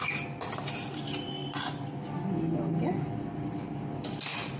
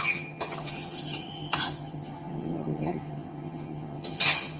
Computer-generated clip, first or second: second